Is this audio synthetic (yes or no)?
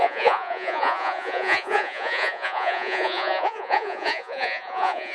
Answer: yes